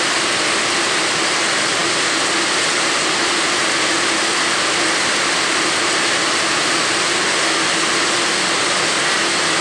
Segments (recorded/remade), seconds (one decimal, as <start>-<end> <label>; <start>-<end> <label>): 0.0-9.6 recorded